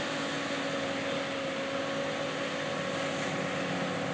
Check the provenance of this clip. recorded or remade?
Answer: recorded